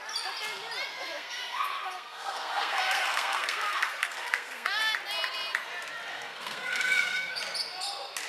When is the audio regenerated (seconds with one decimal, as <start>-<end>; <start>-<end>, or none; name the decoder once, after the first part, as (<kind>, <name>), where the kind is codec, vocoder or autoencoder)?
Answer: 0.9-4.8 (codec, SNAC); 6.1-7.4